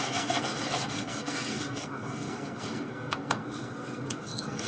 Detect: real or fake fake